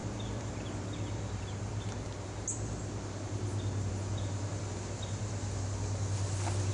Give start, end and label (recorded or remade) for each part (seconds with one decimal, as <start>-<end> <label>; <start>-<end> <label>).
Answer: 0.0-6.7 recorded